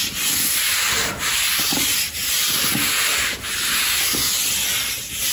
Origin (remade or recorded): recorded